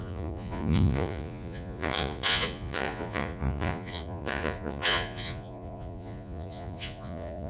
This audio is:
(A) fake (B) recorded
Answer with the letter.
A